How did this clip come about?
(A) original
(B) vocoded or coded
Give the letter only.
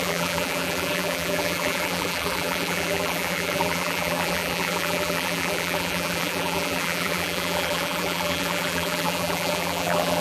B